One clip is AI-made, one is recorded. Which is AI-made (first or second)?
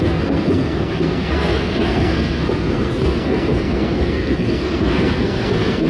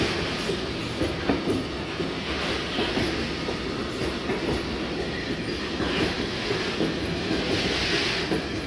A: first